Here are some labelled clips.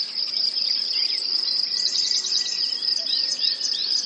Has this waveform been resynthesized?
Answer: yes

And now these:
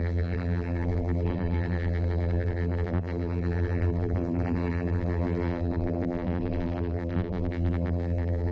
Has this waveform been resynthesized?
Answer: yes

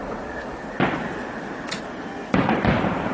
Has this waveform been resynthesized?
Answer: no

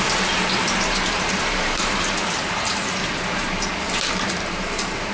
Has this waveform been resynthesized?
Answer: yes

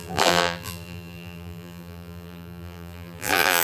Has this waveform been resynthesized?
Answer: yes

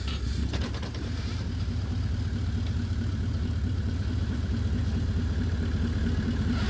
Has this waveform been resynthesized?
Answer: yes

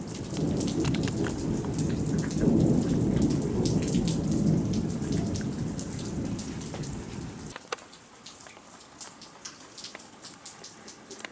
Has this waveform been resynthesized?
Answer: no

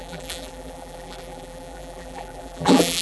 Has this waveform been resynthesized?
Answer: yes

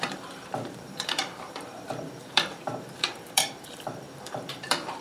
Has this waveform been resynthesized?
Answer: yes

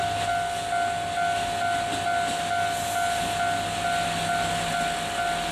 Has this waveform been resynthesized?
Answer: no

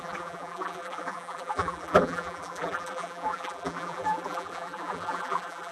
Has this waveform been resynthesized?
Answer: yes